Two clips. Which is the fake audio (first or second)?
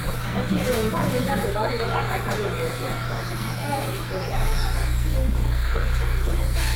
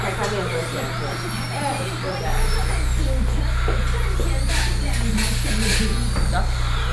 first